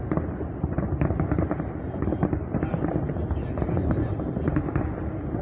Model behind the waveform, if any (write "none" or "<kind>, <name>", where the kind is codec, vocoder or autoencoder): none